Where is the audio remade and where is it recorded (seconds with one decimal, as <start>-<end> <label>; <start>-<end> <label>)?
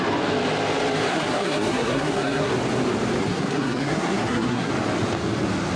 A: 0.0-1.1 recorded; 1.1-2.5 remade; 2.5-3.2 recorded; 3.2-4.7 remade; 4.7-5.8 recorded